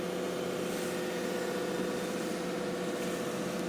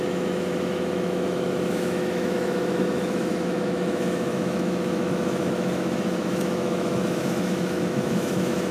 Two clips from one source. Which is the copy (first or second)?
second